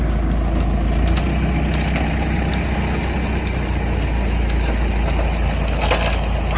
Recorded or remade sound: recorded